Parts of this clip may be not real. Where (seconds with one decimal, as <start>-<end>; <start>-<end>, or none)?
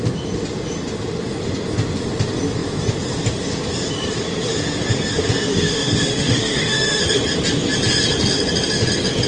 5.5-7.0